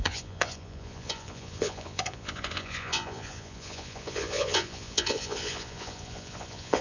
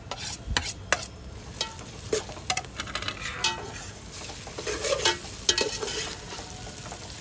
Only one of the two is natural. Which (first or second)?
second